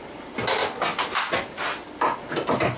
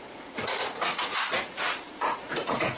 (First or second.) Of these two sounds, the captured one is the first